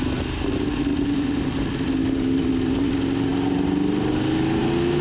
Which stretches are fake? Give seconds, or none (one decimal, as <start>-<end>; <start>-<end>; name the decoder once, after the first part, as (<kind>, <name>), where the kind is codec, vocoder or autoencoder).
none